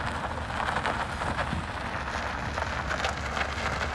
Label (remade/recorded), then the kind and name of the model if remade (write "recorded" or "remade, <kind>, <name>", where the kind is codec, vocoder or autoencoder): recorded